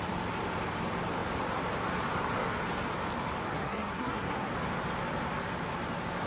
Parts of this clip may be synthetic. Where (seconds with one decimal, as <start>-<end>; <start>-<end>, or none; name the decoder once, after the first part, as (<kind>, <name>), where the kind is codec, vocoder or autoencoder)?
3.5-4.5 (codec, SNAC)